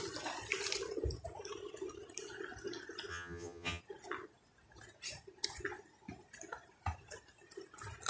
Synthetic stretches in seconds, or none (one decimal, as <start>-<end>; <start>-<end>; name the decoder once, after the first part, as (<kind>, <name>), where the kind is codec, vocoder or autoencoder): 3.1-3.8 (vocoder, HiFi-GAN)